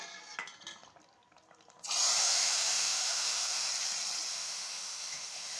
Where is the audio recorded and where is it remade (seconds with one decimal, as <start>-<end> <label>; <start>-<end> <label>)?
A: 0.0-2.2 recorded; 2.2-3.7 remade; 3.7-4.3 recorded; 4.3-5.6 remade